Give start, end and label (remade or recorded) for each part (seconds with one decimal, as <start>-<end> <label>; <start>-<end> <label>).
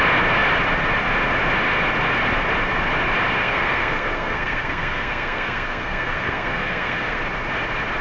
0.0-3.4 recorded; 3.4-7.2 remade; 7.2-8.0 recorded